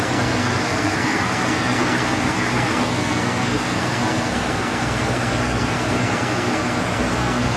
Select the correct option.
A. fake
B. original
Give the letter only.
A